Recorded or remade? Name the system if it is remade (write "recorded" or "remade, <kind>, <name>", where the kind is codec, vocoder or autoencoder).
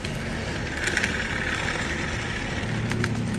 recorded